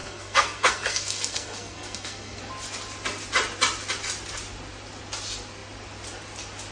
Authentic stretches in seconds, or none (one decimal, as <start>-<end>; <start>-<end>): 2.4-6.7